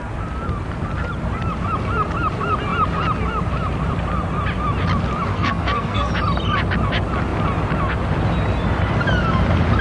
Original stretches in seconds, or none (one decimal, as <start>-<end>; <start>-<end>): 0.0-5.3; 6.1-9.8

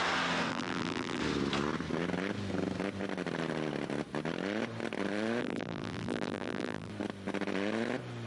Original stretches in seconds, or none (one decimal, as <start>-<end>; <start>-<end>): 0.0-0.5; 1.2-5.4; 6.9-8.3

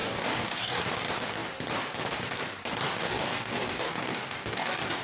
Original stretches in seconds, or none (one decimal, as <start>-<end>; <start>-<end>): 0.8-3.0

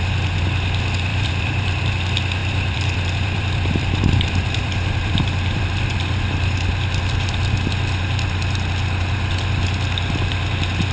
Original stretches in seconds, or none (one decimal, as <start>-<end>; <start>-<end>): 0.0-1.1; 1.9-2.4; 5.6-10.9

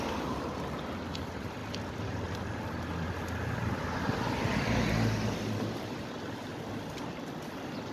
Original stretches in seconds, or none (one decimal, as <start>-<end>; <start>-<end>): 0.0-6.5; 7.1-7.9

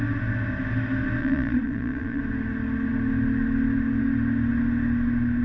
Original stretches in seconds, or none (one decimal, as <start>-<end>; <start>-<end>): 0.0-1.2; 2.2-5.4

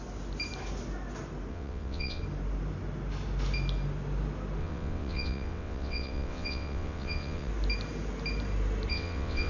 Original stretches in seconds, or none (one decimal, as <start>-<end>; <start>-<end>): 0.0-1.5; 2.2-4.6; 7.5-8.9

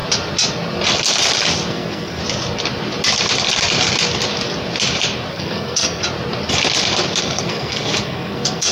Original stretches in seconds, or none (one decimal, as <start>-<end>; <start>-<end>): 0.0-1.7; 2.2-5.3; 6.0-7.2